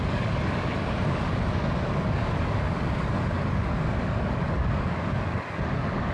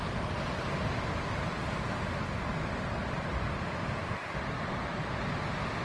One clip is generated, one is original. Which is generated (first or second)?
first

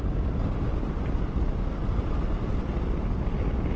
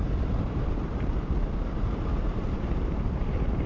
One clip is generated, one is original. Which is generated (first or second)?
second